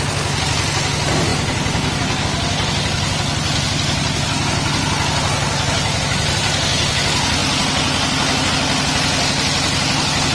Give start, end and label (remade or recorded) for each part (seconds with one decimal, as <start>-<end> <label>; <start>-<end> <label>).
0.0-10.3 recorded